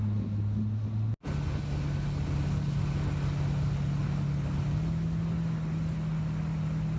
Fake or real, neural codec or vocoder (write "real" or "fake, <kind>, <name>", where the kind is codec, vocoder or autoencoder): real